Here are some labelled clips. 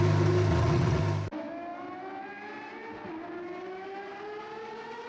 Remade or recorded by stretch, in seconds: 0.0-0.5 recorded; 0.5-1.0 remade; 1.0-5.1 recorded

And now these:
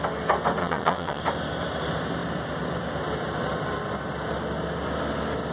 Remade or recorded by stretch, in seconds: 0.0-0.6 recorded; 0.6-1.2 remade; 1.2-5.5 recorded

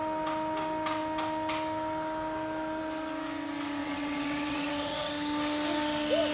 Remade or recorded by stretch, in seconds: 0.0-3.8 recorded; 3.8-5.1 remade; 5.1-6.3 recorded